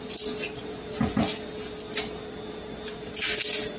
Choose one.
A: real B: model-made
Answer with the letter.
A